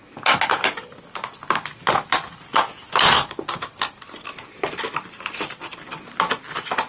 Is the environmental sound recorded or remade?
recorded